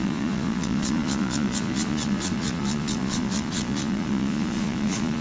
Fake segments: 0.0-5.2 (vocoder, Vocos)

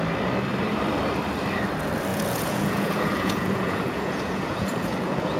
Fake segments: 2.1-5.4 (vocoder, Vocos)

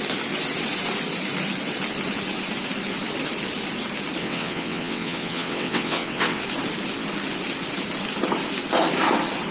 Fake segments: 4.2-6.4 (vocoder, WaveNeXt)

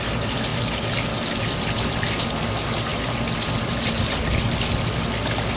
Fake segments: none

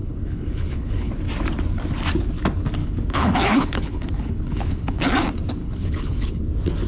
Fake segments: 0.0-1.1 (codec, HILCodec); 2.8-5.1; 5.6-6.4

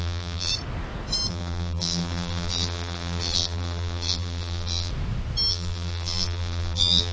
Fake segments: 0.0-0.5 (vocoder, BigVGAN v2); 1.3-4.9; 5.5-7.1

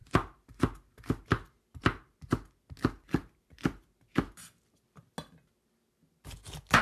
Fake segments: none